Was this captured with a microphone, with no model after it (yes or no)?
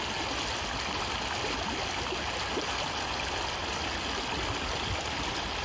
yes